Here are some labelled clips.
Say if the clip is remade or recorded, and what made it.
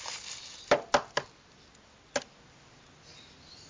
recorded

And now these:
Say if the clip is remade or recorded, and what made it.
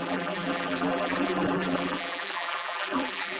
remade, vocoder, BigVGAN v2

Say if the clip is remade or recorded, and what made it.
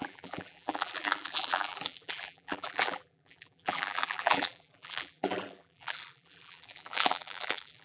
remade, vocoder, BigVGAN v2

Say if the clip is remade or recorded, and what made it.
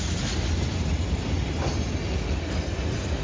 recorded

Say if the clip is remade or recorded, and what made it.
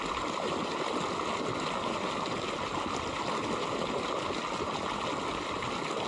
recorded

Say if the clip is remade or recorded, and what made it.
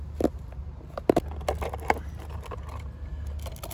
recorded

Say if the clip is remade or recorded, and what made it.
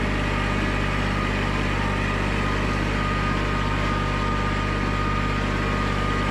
recorded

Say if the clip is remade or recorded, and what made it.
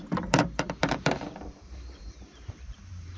remade, vocoder, BigVGAN v2